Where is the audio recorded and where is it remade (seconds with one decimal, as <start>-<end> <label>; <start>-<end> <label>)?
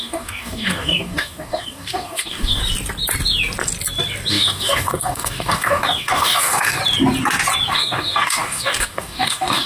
0.0-2.6 remade; 2.6-4.3 recorded; 4.3-6.8 remade; 6.8-7.7 recorded; 7.7-9.7 remade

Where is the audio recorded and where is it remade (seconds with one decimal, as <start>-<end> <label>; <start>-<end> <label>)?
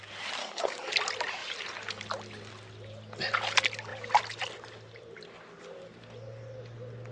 0.0-0.4 recorded; 0.4-0.9 remade; 0.9-7.1 recorded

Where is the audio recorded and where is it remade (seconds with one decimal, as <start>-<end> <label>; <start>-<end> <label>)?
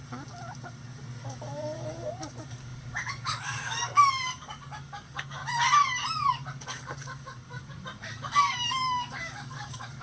0.0-1.2 recorded; 1.2-5.4 remade; 5.4-6.3 recorded; 6.3-10.0 remade